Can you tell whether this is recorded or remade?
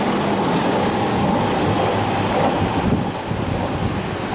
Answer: recorded